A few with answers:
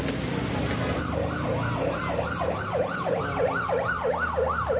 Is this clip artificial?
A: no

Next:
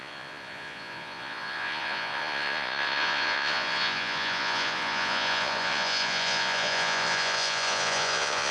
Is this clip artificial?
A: yes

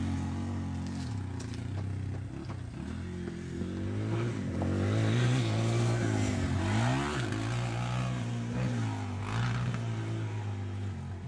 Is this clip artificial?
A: no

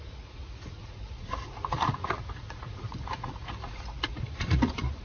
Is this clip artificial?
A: yes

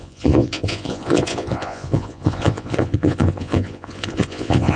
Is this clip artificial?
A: yes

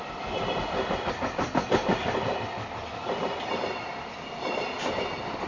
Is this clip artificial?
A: no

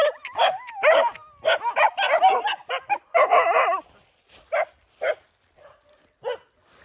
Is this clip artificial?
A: no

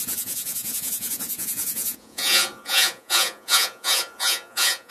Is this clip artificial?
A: yes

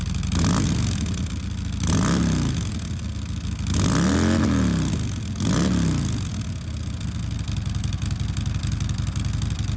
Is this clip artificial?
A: no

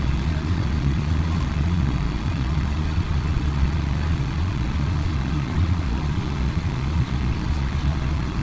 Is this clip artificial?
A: yes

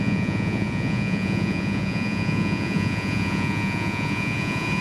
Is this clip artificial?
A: yes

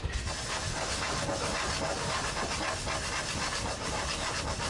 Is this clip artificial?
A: no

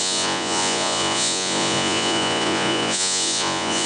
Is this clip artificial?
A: yes